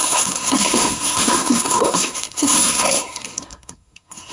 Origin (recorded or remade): remade